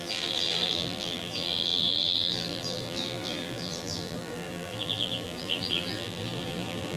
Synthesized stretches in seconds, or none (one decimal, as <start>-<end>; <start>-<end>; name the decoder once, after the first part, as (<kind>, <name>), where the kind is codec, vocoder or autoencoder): 0.0-7.0 (vocoder, BigVGAN v2)